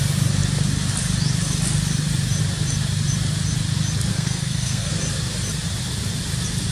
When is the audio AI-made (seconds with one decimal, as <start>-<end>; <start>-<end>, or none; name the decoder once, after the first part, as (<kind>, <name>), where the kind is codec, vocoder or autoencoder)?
4.1-4.9 (codec, SNAC)